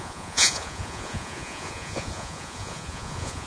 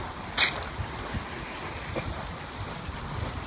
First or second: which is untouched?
second